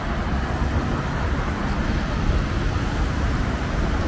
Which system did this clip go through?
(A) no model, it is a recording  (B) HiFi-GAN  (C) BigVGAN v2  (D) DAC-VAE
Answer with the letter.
A